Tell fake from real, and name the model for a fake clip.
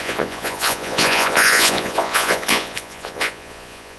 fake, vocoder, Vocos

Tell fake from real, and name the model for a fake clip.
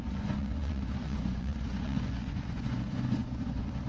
fake, vocoder, Vocos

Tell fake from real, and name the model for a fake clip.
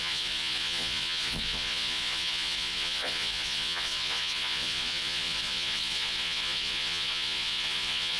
fake, vocoder, Vocos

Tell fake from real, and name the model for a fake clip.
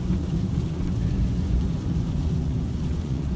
fake, vocoder, Vocos